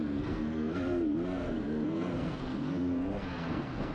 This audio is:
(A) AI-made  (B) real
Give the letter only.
A